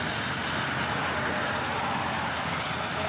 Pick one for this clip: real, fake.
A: real